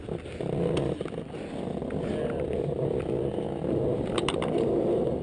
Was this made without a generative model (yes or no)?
yes